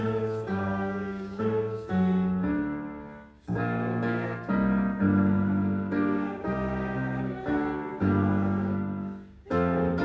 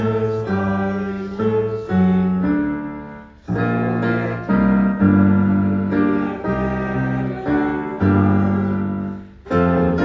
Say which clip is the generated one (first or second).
first